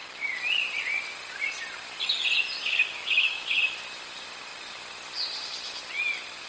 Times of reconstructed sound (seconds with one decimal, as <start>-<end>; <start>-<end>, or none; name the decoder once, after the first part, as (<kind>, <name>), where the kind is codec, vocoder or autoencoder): 2.6-3.6 (codec, DAC)